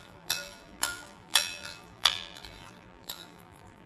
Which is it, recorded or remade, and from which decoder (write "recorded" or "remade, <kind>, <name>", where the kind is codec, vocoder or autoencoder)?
remade, vocoder, BigVGAN v2